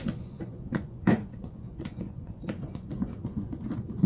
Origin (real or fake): fake